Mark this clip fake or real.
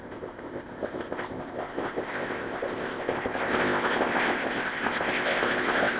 fake